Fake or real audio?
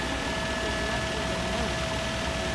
real